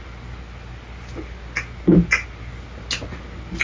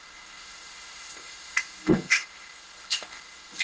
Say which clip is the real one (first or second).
first